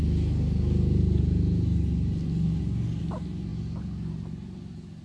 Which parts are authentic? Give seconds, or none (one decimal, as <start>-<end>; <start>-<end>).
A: 0.0-5.0